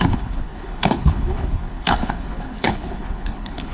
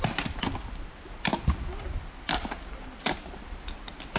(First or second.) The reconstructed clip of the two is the first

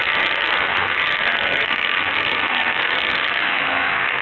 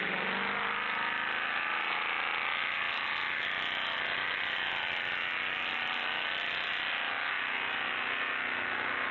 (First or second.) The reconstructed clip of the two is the first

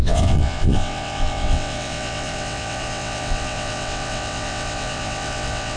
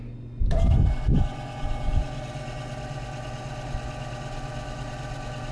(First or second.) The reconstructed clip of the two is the first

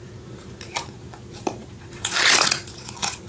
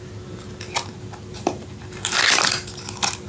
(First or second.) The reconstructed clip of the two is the first